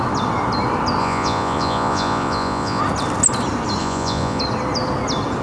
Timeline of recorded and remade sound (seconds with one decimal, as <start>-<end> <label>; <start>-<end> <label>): 0.0-1.0 recorded; 1.0-2.8 remade; 2.8-3.8 recorded; 3.8-4.4 remade; 4.4-5.4 recorded